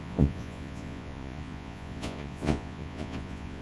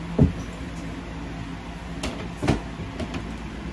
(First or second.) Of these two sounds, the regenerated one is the first